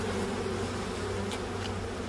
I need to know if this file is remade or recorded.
recorded